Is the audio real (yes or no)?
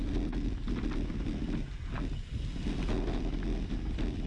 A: yes